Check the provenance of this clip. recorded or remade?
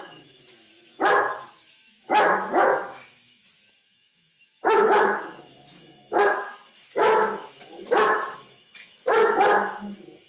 remade